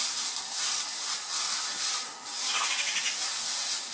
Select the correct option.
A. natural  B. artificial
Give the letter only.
A